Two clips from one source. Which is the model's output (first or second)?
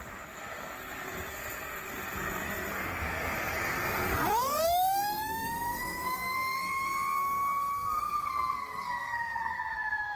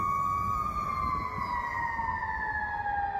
first